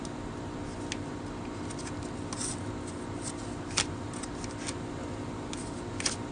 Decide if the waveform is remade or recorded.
recorded